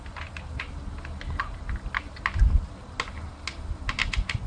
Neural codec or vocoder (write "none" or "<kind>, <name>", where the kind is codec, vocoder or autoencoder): none